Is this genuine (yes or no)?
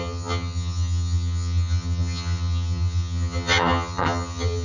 no